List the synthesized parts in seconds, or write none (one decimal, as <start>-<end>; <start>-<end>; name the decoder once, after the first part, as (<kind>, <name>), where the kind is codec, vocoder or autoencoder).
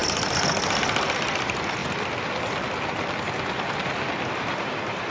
none